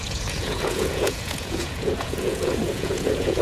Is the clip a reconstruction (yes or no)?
yes